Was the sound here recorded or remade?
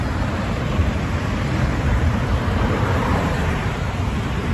remade